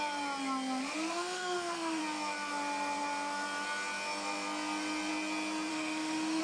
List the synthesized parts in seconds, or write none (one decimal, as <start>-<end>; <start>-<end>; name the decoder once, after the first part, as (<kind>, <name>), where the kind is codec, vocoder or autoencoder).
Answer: 1.1-2.0 (autoencoder, DAC-VAE); 5.7-6.4